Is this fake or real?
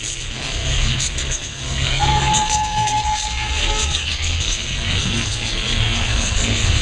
fake